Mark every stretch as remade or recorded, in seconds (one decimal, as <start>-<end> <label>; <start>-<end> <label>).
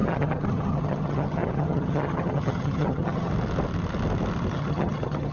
0.0-3.3 remade; 3.3-4.5 recorded; 4.5-5.3 remade